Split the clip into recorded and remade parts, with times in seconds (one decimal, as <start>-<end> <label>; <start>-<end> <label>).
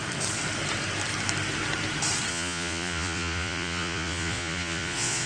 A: 0.0-2.3 recorded; 2.3-5.3 remade